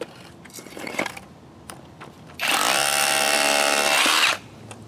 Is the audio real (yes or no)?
no